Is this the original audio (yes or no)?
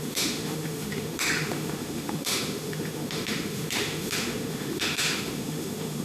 no